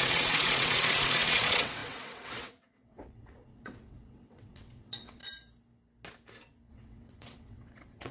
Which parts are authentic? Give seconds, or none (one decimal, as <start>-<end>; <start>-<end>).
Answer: 5.2-6.7